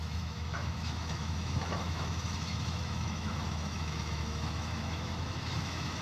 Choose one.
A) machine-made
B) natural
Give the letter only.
A